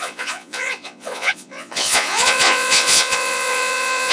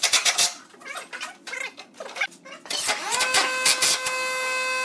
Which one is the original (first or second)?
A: second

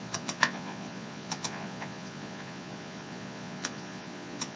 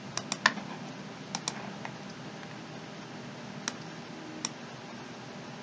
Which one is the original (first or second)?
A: second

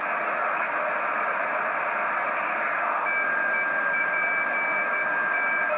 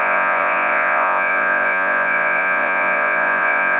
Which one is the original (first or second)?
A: first